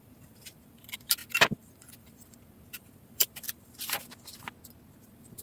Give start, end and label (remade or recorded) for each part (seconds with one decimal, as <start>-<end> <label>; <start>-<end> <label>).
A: 0.0-4.0 remade; 4.0-5.0 recorded; 5.0-5.4 remade